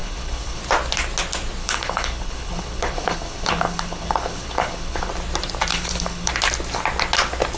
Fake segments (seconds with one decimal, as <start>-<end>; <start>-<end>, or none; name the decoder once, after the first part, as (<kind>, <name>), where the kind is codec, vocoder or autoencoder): 0.0-0.6 (codec, HILCodec); 1.6-5.1; 5.7-6.3